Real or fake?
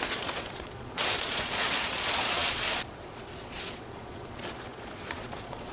fake